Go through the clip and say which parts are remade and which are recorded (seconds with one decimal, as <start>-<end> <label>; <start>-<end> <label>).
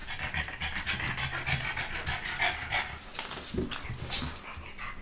0.0-5.0 recorded